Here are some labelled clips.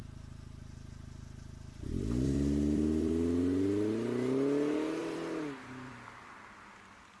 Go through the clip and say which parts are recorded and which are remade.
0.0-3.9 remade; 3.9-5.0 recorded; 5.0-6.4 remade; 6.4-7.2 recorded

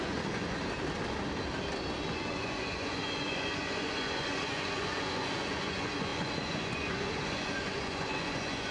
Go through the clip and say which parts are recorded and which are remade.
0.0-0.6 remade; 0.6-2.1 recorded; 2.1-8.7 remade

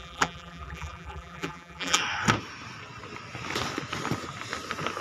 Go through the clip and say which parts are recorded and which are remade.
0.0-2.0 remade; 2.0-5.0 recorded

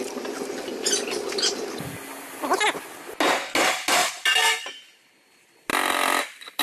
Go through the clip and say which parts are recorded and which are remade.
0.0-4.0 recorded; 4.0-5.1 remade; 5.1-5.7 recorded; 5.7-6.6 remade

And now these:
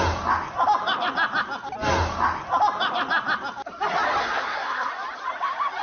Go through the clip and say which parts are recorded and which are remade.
0.0-4.2 recorded; 4.2-4.9 remade; 4.9-5.8 recorded